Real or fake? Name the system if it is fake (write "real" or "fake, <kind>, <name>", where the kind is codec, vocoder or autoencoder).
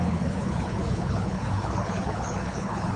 fake, codec, HILCodec